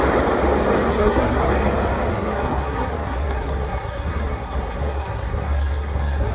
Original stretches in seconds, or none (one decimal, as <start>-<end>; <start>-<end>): 0.0-0.9; 1.5-2.1